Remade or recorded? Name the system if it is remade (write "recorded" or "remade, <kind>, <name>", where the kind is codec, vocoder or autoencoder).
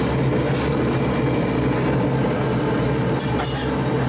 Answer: recorded